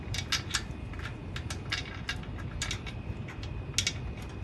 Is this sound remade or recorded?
recorded